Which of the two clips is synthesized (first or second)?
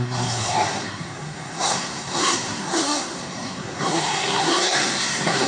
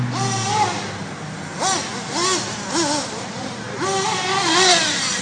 first